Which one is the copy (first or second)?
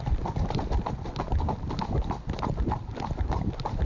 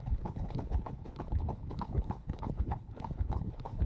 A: second